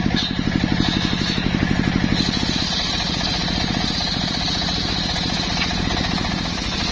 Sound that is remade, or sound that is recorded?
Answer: recorded